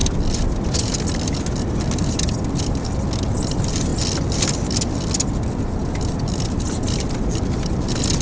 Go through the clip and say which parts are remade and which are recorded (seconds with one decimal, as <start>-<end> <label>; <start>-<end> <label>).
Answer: 0.0-8.2 recorded